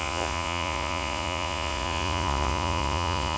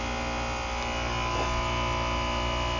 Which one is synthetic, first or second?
first